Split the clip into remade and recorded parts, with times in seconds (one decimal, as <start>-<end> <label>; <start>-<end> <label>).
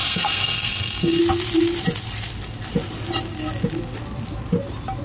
0.0-1.2 remade; 1.2-5.0 recorded